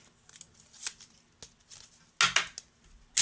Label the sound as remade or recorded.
recorded